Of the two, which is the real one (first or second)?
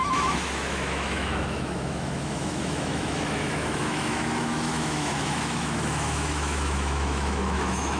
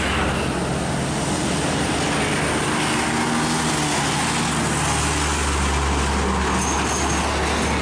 second